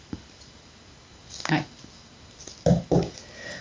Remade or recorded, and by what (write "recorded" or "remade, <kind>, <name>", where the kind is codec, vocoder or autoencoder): recorded